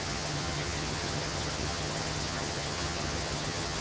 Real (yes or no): no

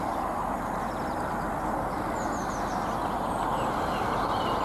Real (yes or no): yes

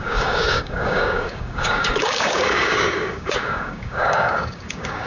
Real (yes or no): no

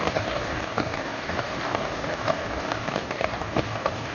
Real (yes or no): no